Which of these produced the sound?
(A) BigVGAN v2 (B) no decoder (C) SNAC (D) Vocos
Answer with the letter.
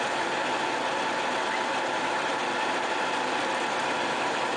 B